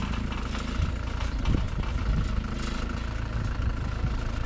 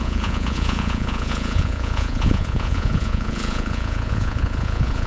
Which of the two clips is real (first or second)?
first